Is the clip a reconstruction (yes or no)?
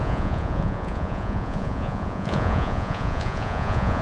yes